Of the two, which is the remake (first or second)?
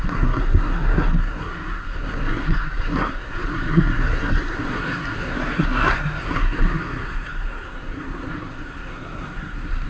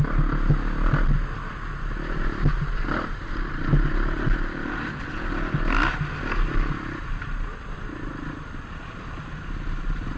first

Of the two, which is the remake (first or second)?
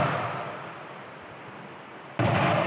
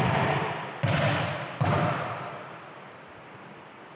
second